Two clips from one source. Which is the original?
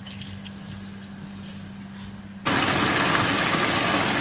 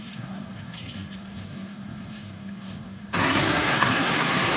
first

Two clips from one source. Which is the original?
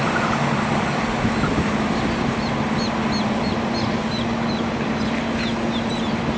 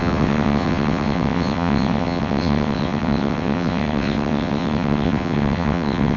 first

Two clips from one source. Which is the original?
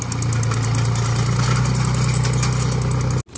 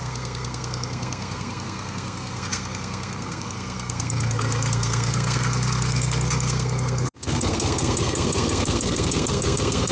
first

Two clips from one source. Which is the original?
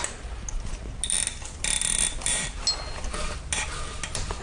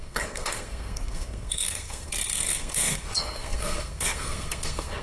first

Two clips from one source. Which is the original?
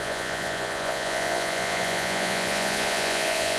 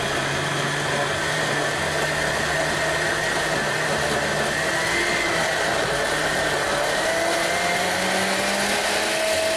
second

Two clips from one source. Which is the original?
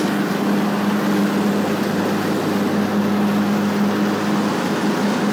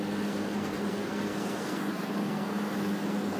first